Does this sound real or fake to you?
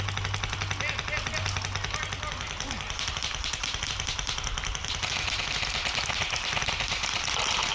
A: real